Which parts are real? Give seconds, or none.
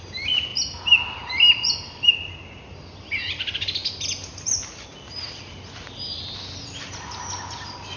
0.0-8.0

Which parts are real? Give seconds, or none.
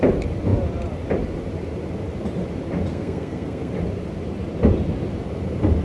0.0-2.9; 3.7-5.8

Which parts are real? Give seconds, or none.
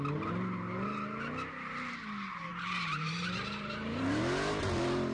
0.0-2.5; 4.2-5.1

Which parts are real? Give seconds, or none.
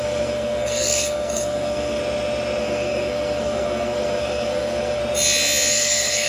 2.0-2.6; 5.0-5.7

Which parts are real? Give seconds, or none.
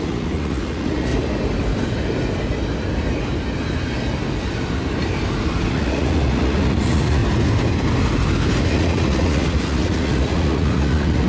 1.1-5.7; 7.2-8.7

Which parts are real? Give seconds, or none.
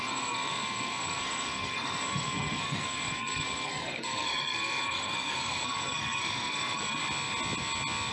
7.0-8.1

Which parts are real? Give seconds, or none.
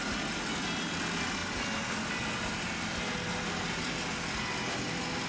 0.0-5.3